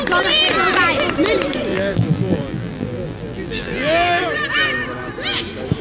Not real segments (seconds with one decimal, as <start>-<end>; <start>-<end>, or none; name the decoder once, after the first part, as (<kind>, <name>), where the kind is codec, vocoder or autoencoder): 1.7-4.2 (vocoder, BigVGAN v2)